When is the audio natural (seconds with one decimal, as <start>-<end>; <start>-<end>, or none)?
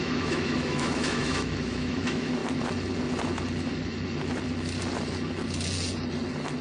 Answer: 2.4-6.6